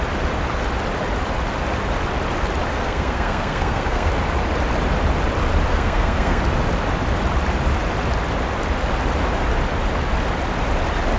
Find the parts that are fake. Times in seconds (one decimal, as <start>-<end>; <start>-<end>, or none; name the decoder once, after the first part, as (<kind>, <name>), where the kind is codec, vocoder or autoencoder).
2.7-4.1 (codec, SNAC); 5.7-6.4